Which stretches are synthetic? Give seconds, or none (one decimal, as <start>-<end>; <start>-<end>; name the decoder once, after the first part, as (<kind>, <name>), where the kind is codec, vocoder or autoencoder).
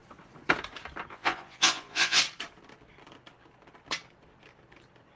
1.1-2.2 (vocoder, Vocos)